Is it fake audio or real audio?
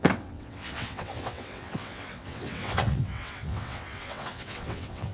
fake